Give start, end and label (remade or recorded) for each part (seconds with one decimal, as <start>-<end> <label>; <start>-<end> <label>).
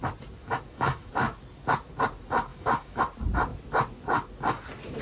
0.0-0.4 recorded; 0.4-1.1 remade; 1.1-2.5 recorded; 2.5-3.0 remade; 3.0-5.0 recorded